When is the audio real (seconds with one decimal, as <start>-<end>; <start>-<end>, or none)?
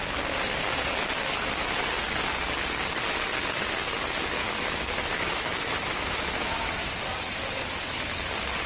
0.0-4.4; 6.9-8.7